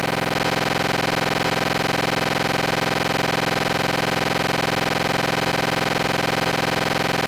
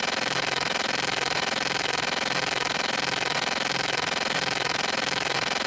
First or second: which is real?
first